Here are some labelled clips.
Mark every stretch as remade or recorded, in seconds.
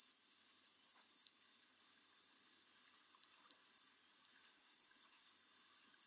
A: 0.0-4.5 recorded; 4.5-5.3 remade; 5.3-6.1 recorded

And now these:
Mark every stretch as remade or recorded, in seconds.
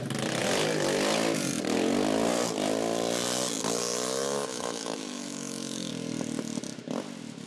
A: 0.0-4.5 recorded; 4.5-5.9 remade; 5.9-7.5 recorded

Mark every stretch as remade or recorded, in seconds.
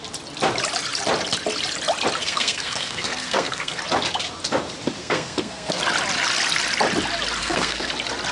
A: 0.0-2.2 recorded; 2.2-3.8 remade; 3.8-5.0 recorded; 5.0-5.8 remade; 5.8-7.4 recorded; 7.4-7.9 remade; 7.9-8.3 recorded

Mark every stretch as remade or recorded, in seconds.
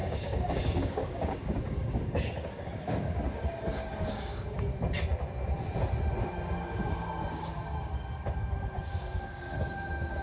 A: 0.0-4.7 remade; 4.7-6.2 recorded; 6.2-10.2 remade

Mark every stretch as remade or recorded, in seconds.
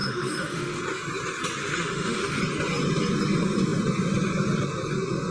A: 0.0-0.8 remade; 0.8-1.6 recorded; 1.6-2.4 remade; 2.4-5.3 recorded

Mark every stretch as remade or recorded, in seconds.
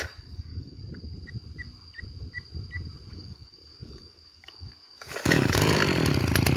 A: 0.0-0.8 remade; 0.8-3.1 recorded; 3.1-5.8 remade; 5.8-6.6 recorded